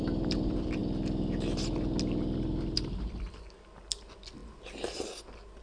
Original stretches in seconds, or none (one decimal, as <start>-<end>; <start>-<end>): 0.0-5.6

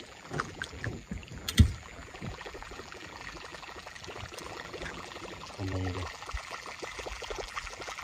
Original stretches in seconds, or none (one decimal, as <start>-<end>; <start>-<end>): none

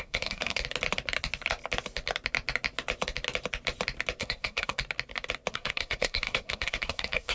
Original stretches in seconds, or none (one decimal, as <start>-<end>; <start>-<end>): 0.6-4.2; 4.8-5.5